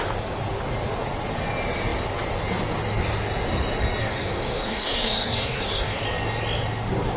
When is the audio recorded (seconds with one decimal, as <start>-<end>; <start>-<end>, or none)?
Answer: 0.0-4.0; 6.0-7.2